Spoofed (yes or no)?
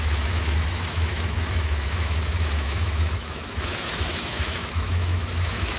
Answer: yes